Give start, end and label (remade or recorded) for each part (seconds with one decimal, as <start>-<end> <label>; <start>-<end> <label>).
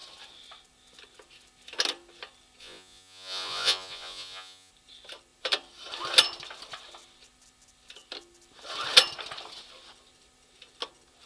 0.0-2.6 recorded; 2.6-4.7 remade; 4.7-11.3 recorded